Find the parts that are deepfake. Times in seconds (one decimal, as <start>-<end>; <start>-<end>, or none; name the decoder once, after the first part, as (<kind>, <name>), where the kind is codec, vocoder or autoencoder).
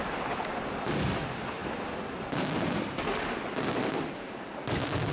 0.0-5.1 (vocoder, BigVGAN v2)